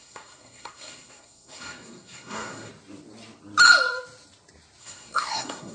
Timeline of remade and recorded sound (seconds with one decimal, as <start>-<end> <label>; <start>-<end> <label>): 0.0-2.7 remade; 2.7-4.8 recorded; 4.8-5.7 remade